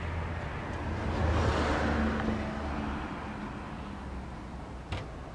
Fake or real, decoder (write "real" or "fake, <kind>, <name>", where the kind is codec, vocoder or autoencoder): real